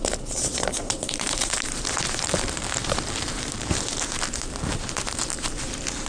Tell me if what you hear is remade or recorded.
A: remade